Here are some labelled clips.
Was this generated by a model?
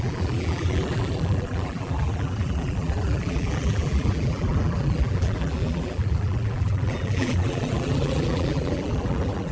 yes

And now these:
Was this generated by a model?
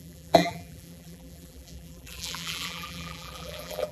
yes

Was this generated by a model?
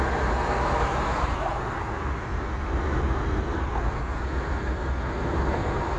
no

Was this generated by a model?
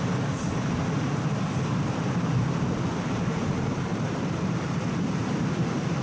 yes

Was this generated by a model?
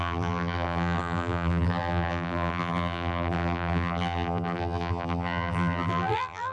yes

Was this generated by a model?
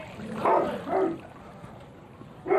no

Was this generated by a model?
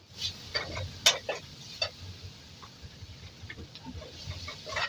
no